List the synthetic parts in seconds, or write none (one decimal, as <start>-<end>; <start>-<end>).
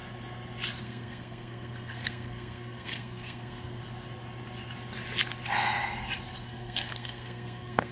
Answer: 0.8-3.8; 6.4-7.9